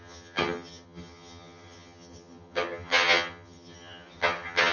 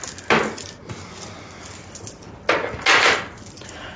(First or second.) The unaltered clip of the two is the second